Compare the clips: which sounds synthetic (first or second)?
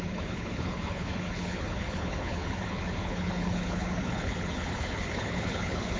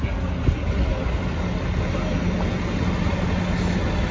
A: first